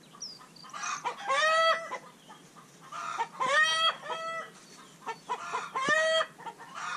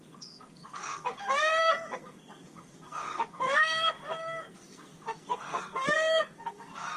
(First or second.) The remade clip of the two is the second